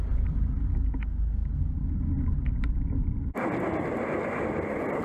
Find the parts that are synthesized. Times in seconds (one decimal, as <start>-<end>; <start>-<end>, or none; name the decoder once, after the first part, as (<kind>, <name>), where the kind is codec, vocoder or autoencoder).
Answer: none